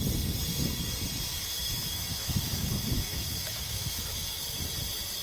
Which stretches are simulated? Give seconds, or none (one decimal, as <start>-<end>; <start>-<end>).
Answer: 1.3-4.4